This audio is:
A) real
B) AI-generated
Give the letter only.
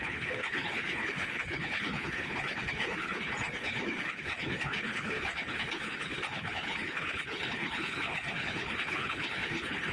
B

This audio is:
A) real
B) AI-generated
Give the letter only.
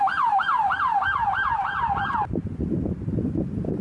B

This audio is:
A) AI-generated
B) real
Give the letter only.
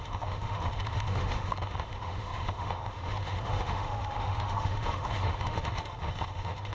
A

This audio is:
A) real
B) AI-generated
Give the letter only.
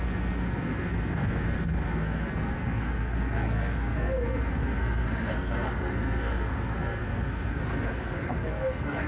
B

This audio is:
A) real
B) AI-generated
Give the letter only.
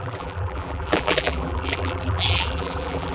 B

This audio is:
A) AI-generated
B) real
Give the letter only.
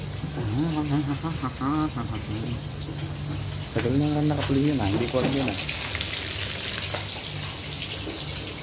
B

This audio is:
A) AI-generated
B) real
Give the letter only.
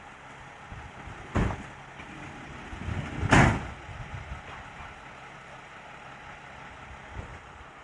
B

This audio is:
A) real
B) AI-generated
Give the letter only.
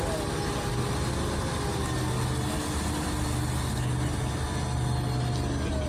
A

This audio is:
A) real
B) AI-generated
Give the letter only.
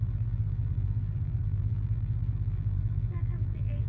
B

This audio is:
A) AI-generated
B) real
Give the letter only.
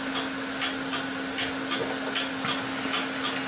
B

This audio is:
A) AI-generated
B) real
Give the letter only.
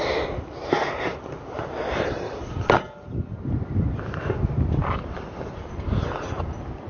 B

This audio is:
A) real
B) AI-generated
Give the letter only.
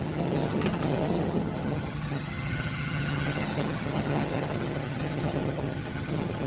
B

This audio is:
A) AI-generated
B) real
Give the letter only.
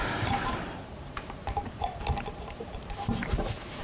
A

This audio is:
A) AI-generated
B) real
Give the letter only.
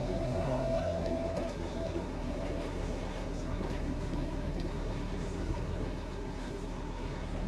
A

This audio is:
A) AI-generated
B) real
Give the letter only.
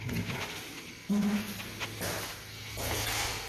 B